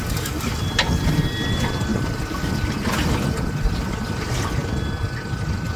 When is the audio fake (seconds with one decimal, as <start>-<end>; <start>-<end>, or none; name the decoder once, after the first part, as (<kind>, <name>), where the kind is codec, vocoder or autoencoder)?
0.0-1.9 (vocoder, BigVGAN v2); 3.5-5.8